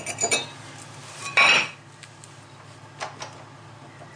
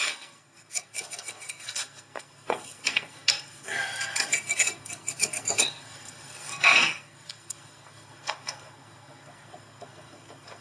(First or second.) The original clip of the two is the first